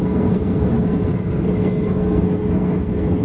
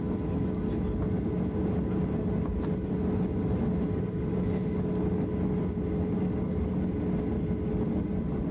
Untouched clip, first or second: second